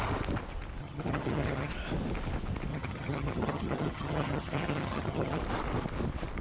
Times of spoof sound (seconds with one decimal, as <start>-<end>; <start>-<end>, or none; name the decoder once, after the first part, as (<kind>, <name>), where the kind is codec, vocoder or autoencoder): 0.8-1.7 (vocoder, HiFi-GAN); 2.7-5.4